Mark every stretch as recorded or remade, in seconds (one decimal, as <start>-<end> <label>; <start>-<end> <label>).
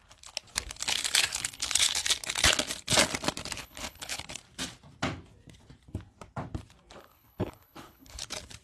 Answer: 0.0-1.3 recorded; 1.3-2.1 remade; 2.1-3.6 recorded; 3.6-4.2 remade; 4.2-7.0 recorded; 7.0-8.2 remade; 8.2-8.6 recorded